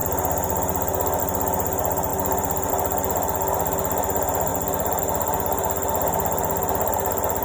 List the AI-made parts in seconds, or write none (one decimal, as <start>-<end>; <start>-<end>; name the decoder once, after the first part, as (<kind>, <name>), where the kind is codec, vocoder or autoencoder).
none